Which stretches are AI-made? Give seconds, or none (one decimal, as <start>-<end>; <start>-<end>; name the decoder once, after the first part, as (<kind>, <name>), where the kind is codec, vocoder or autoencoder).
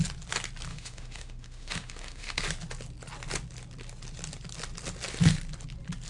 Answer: 0.7-2.4 (autoencoder, DAC-VAE)